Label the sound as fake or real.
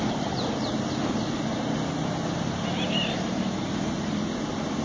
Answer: real